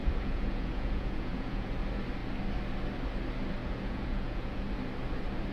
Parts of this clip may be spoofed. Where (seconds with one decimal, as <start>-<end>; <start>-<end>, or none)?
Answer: 0.0-1.7; 3.6-4.7